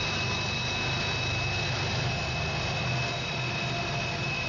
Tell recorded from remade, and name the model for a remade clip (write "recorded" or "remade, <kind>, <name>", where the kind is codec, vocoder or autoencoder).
recorded